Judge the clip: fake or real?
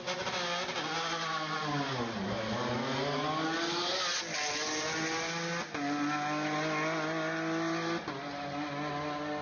real